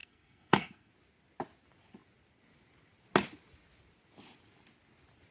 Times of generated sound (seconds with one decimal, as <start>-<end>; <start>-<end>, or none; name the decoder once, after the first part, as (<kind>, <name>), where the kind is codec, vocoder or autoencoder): 0.0-0.9 (codec, SNAC)